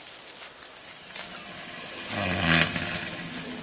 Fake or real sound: real